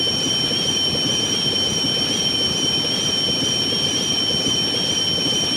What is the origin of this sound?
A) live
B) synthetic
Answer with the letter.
A